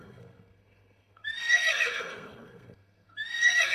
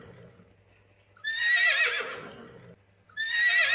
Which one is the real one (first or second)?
second